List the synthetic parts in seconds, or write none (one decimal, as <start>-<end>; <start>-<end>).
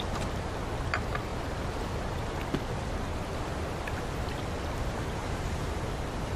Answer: 5.2-5.9